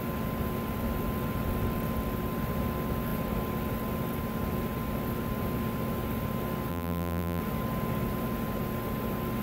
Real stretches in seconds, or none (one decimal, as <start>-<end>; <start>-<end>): 0.0-6.7; 7.4-9.4